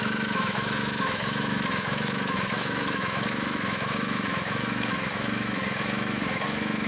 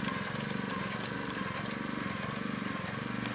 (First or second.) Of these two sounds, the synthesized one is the first